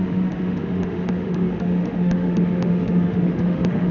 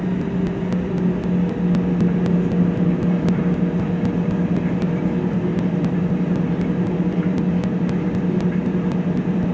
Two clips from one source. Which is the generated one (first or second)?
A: first